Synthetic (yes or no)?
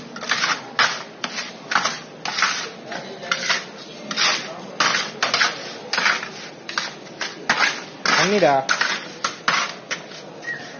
no